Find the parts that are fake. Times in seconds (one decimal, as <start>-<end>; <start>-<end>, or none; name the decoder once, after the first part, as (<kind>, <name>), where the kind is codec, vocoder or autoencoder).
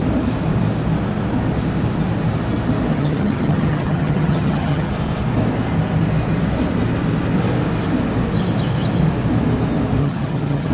2.9-4.9 (vocoder, HiFi-GAN); 10.0-10.7